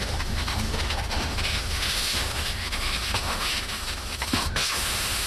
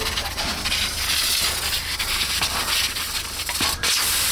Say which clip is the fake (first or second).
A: first